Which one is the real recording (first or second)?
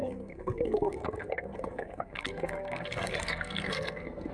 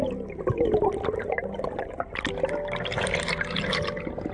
second